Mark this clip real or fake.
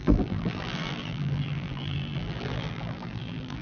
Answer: fake